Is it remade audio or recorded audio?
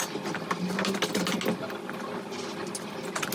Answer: recorded